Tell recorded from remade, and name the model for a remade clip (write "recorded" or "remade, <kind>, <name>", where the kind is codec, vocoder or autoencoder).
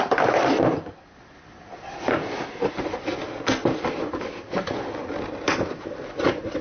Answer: recorded